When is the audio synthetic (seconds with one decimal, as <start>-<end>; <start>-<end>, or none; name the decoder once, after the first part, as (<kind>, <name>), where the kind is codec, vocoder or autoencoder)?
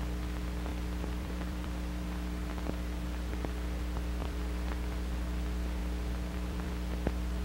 0.7-2.5 (vocoder, BigVGAN v2); 4.2-4.7; 5.8-6.7